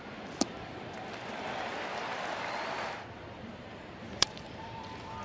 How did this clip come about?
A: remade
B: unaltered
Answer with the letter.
A